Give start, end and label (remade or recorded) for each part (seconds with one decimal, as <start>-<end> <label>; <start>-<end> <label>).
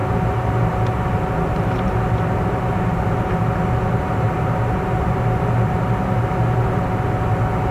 0.0-7.7 recorded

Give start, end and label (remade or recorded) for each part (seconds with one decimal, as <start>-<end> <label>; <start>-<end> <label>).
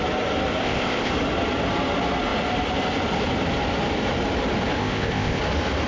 0.0-0.6 recorded; 0.6-1.1 remade; 1.1-4.8 recorded; 4.8-5.4 remade; 5.4-5.9 recorded